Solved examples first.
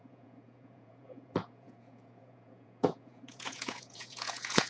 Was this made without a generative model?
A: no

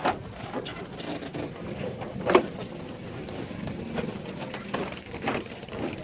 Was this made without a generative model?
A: yes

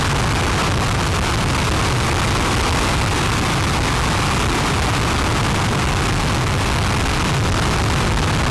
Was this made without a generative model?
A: yes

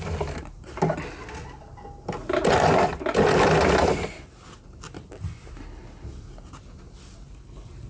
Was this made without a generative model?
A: yes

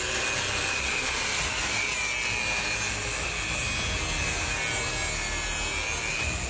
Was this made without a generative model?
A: yes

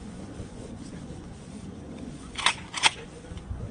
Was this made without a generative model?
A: no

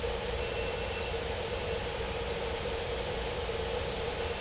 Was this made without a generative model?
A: yes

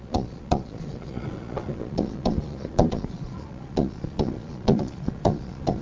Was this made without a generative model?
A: no